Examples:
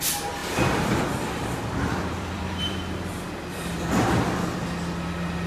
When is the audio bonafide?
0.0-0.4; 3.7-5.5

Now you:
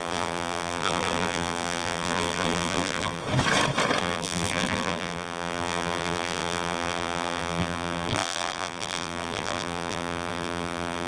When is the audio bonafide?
3.2-4.0

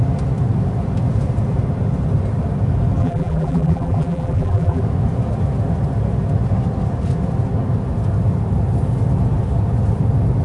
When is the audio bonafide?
0.0-3.0; 4.8-10.4

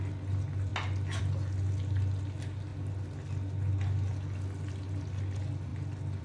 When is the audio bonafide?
0.0-6.2